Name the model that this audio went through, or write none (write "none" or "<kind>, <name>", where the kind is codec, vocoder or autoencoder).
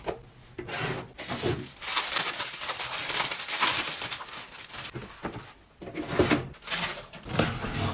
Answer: none